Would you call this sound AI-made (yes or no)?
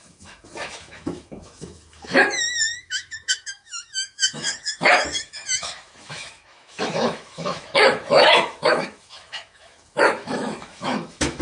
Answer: yes